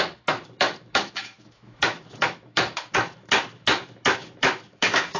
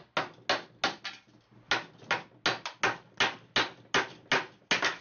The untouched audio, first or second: second